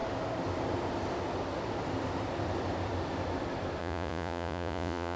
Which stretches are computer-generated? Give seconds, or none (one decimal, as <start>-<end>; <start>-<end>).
3.8-5.2